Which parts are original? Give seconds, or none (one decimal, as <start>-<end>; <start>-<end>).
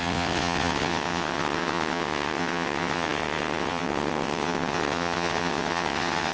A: none